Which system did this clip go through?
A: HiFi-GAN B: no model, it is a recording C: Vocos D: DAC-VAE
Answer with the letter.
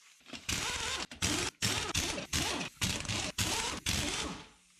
B